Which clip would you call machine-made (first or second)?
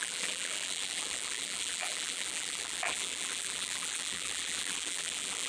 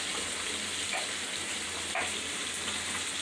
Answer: first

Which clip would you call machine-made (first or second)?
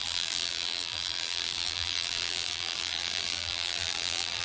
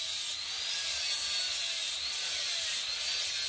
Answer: first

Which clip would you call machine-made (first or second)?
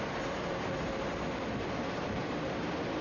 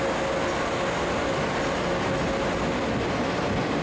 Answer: first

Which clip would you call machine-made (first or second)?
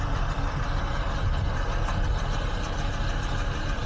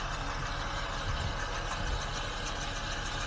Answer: first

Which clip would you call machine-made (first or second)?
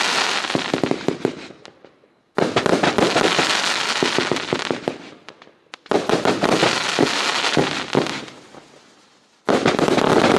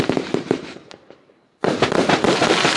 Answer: second